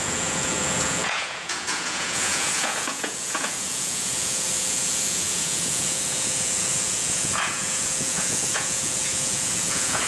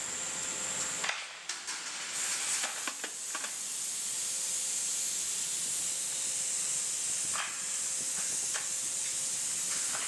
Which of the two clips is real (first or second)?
second